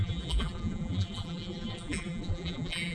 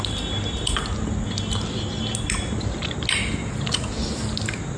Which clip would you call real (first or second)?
second